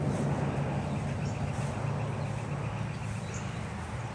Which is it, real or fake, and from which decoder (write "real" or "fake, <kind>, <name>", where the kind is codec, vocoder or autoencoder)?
real